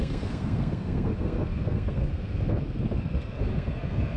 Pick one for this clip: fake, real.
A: fake